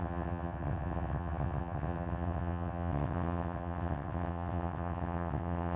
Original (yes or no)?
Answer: no